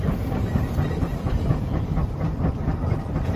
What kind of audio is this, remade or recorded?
remade